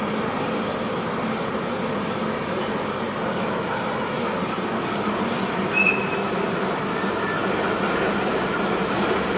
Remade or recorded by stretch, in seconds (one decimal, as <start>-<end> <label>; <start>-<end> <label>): 0.0-0.7 recorded; 0.7-1.5 remade; 1.5-9.4 recorded